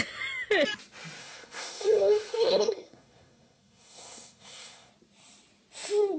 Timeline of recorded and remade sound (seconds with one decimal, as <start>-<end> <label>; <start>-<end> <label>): 0.0-1.2 recorded; 1.2-4.9 remade; 4.9-6.2 recorded